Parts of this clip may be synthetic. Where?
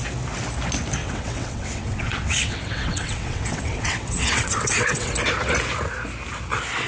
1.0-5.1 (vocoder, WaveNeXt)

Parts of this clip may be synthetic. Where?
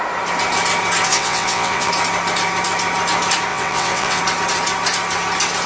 1.1-1.9 (vocoder, WaveNeXt); 3.5-4.2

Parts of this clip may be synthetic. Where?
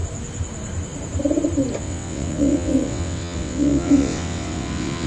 1.8-5.1 (vocoder, WaveNeXt)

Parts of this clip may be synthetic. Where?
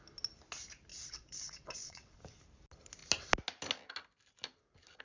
0.9-2.2 (vocoder, WaveNeXt)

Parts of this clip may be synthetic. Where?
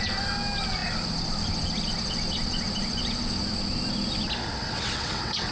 4.6-5.5 (vocoder, WaveNeXt)